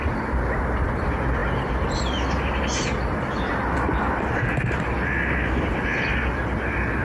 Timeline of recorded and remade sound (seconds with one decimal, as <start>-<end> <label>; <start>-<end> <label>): 0.0-7.0 recorded